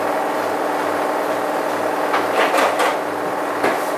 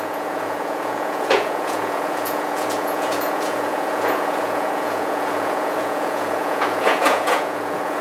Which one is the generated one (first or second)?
second